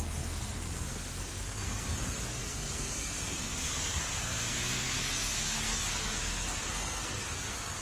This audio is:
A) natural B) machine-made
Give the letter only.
B